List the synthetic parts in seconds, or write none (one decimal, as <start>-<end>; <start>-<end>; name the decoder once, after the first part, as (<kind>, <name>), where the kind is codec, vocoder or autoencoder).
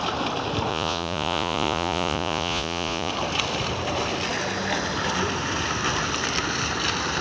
0.7-3.1 (vocoder, Vocos)